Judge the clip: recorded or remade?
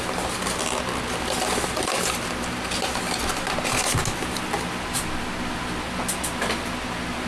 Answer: recorded